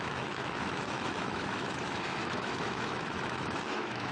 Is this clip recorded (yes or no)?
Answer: no